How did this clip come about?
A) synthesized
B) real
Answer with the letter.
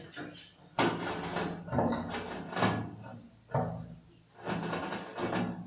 B